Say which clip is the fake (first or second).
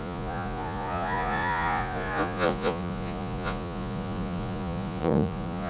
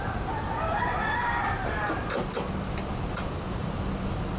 first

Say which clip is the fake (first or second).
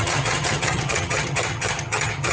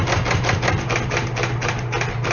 first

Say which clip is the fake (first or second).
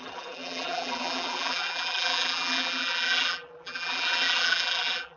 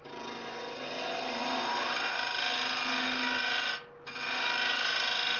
first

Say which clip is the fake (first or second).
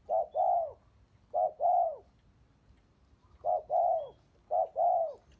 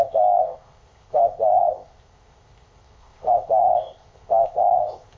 second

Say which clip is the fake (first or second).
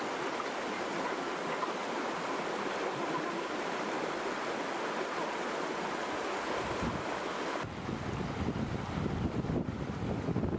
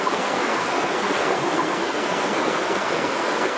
second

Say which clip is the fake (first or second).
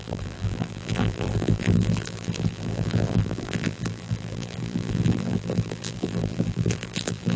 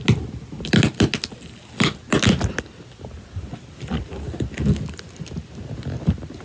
first